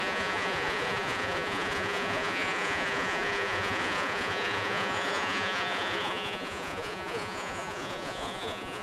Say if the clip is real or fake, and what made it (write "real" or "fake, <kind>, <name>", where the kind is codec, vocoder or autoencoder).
fake, vocoder, Vocos